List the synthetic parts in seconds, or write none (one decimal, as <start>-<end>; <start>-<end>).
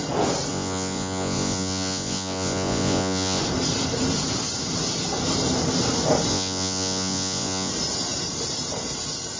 0.5-3.4; 6.3-7.7